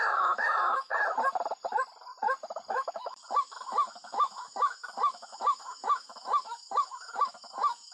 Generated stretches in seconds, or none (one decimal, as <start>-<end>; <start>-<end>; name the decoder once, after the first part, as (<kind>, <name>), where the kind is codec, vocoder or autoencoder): 0.0-0.9 (autoencoder, DAC-VAE); 2.7-7.9